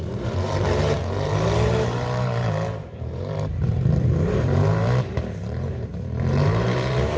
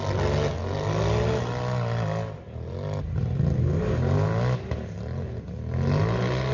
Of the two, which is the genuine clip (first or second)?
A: second